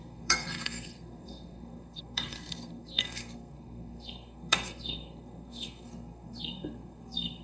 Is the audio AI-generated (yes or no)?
yes